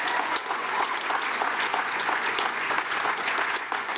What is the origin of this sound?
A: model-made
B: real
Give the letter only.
A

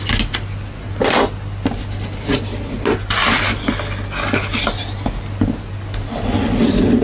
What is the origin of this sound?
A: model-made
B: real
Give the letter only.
B